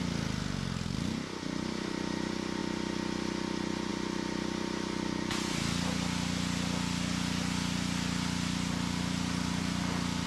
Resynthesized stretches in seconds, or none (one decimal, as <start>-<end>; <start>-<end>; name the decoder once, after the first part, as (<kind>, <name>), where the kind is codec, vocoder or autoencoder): none